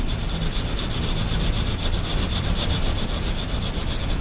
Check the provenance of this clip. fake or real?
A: real